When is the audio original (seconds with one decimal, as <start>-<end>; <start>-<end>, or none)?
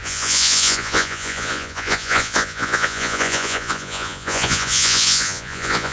none